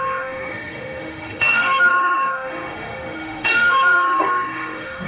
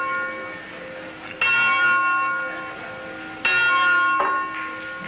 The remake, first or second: first